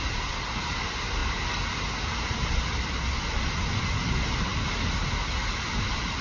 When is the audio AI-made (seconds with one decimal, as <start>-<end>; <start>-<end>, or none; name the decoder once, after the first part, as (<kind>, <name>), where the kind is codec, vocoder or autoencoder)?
none